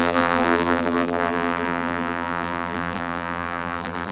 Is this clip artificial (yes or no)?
yes